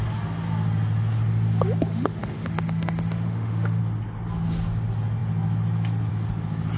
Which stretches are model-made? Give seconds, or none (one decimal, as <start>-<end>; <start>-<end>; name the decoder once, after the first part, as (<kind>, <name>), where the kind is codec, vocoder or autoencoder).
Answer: 1.9-3.8 (autoencoder, DAC-VAE)